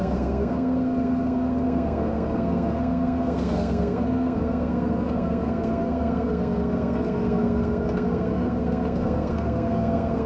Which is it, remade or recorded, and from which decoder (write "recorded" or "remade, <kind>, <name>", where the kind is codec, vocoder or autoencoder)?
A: remade, codec, SNAC